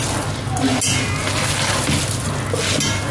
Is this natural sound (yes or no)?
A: yes